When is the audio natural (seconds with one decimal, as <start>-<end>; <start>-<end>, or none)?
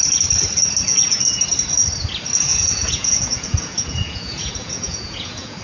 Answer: 0.0-2.5